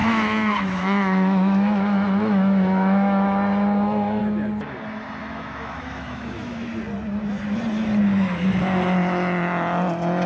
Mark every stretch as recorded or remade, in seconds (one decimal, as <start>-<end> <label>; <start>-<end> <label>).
0.0-4.2 remade; 4.2-5.2 recorded; 5.2-6.7 remade; 6.7-10.3 recorded

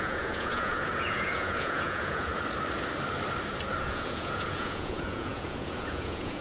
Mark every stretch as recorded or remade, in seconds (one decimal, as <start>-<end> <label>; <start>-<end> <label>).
0.0-2.3 remade; 2.3-3.8 recorded; 3.8-6.4 remade

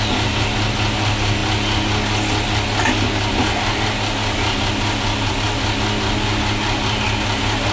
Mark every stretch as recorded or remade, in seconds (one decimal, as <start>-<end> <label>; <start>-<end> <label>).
0.0-7.7 recorded

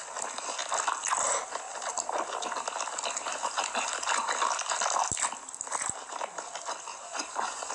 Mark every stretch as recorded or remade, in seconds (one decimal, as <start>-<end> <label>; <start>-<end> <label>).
0.0-6.9 recorded; 6.9-7.7 remade

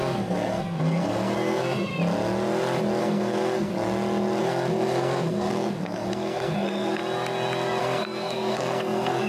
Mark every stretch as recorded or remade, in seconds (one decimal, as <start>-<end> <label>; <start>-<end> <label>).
0.0-1.9 remade; 1.9-3.0 recorded; 3.0-3.7 remade; 3.7-4.4 recorded; 4.4-7.0 remade; 7.0-7.8 recorded; 7.8-9.3 remade

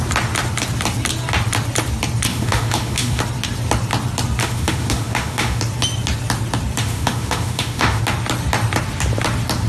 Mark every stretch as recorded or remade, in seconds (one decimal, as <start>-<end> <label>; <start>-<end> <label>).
0.0-2.3 recorded; 2.3-3.2 remade; 3.2-4.4 recorded; 4.4-5.6 remade; 5.6-6.8 recorded; 6.8-8.0 remade; 8.0-9.7 recorded

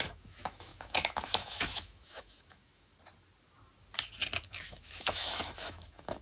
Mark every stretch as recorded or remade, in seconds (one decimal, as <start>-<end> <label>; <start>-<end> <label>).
0.0-2.9 remade; 2.9-4.4 recorded; 4.4-6.2 remade